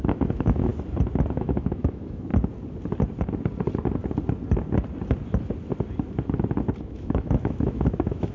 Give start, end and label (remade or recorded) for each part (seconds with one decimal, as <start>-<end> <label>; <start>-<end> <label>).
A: 0.0-0.7 remade; 0.7-1.3 recorded; 1.3-2.3 remade; 2.3-6.8 recorded; 6.8-8.3 remade